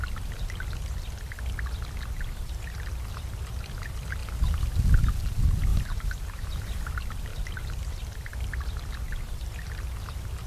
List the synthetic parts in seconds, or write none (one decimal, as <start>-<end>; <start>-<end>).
5.7-6.8; 7.3-8.9